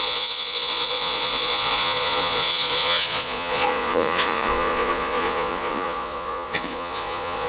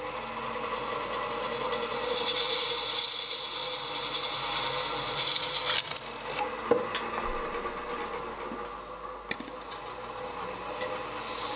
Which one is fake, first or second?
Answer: first